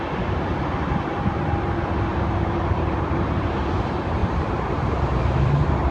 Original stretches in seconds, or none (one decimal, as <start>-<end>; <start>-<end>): 0.0-2.1; 3.7-4.2